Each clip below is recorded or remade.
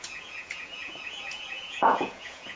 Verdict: remade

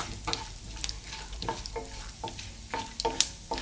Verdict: recorded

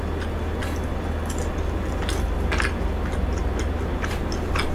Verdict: recorded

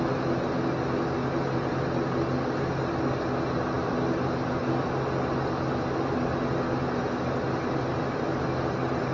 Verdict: recorded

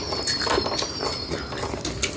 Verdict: recorded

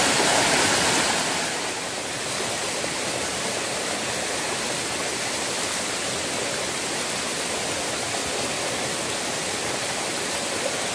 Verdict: recorded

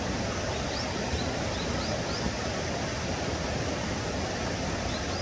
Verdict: recorded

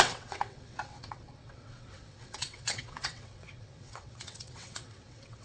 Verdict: remade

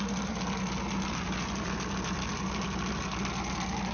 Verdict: recorded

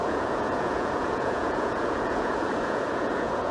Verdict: remade